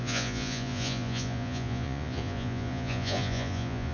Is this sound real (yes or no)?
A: no